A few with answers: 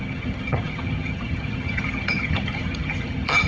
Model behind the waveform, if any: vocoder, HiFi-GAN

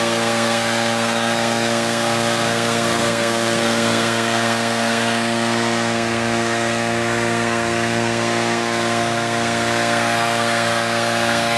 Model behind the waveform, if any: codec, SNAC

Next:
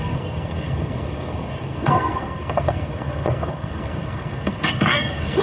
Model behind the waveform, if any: codec, SNAC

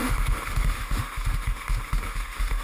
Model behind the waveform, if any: autoencoder, DAC-VAE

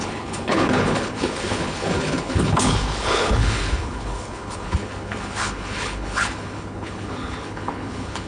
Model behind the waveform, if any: codec, HILCodec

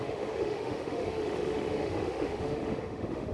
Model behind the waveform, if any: autoencoder, DAC-VAE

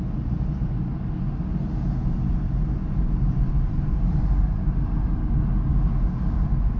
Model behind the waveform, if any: none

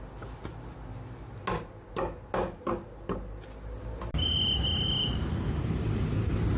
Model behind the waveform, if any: none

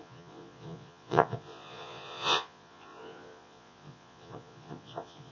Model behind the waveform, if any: vocoder, Vocos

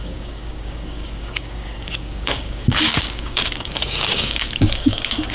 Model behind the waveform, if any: codec, DAC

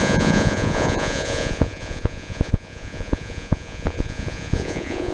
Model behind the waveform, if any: vocoder, Vocos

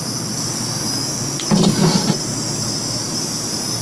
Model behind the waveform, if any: none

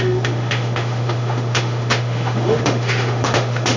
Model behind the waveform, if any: autoencoder, DAC-VAE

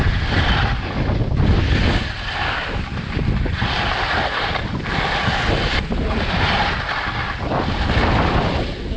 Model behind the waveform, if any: none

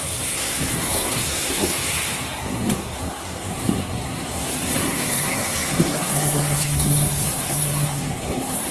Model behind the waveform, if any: codec, SNAC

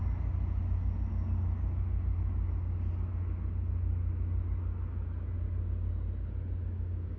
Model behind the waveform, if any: none